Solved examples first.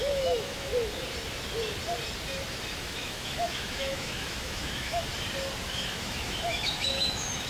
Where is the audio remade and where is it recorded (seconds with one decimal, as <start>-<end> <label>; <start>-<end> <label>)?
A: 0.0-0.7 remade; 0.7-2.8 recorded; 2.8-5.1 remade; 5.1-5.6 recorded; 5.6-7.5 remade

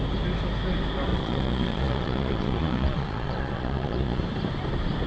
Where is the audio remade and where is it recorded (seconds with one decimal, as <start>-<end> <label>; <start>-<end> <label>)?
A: 0.0-1.1 recorded; 1.1-4.2 remade; 4.2-5.1 recorded

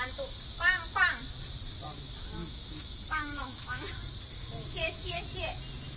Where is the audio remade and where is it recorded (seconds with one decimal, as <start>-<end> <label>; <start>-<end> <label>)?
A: 0.0-2.4 recorded; 2.4-3.9 remade; 3.9-4.6 recorded; 4.6-5.2 remade; 5.2-6.0 recorded

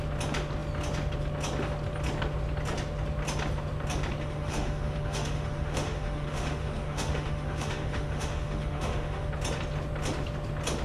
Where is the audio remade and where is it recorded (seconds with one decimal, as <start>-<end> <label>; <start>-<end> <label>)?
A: 0.0-4.2 recorded; 4.2-9.3 remade; 9.3-10.8 recorded

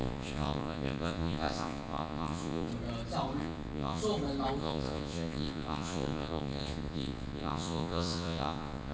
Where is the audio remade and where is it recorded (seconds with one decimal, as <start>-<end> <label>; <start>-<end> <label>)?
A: 0.0-2.7 remade; 2.7-3.4 recorded; 3.4-4.0 remade; 4.0-4.6 recorded; 4.6-8.9 remade

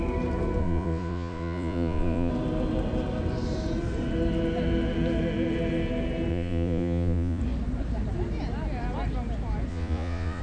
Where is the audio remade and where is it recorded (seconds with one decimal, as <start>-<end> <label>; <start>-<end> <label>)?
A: 0.0-0.6 recorded; 0.6-2.3 remade; 2.3-6.3 recorded; 6.3-7.4 remade; 7.4-9.7 recorded; 9.7-10.4 remade

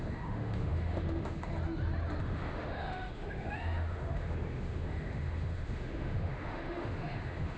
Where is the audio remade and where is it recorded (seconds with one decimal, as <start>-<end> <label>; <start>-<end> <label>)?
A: 0.0-1.5 remade; 1.5-2.2 recorded; 2.2-7.6 remade